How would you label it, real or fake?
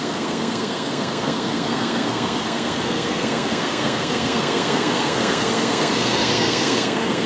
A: fake